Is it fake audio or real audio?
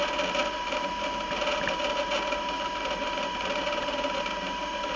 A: real